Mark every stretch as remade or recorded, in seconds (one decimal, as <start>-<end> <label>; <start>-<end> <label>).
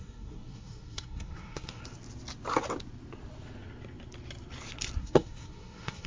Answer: 0.0-1.8 remade; 1.8-5.0 recorded; 5.0-6.1 remade